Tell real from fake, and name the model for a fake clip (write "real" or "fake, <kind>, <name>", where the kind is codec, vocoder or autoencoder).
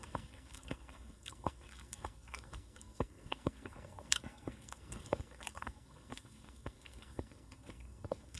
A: fake, codec, SNAC